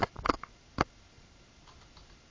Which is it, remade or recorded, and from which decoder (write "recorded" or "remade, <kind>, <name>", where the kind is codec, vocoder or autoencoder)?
recorded